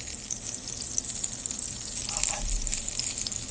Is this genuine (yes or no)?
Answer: yes